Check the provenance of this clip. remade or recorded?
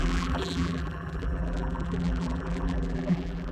remade